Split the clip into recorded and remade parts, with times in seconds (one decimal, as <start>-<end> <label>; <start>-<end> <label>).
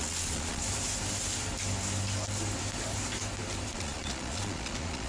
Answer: 0.0-0.6 remade; 0.6-3.7 recorded; 3.7-5.1 remade